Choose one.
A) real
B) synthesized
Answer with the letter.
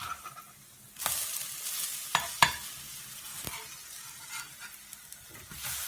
A